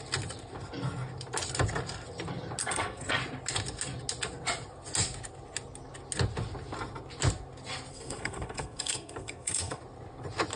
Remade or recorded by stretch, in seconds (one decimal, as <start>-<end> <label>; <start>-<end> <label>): 0.0-2.6 recorded; 2.6-3.2 remade; 3.2-7.9 recorded; 7.9-9.8 remade; 9.8-10.6 recorded